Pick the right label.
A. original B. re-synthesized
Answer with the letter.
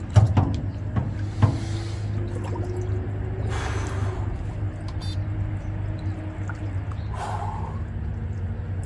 A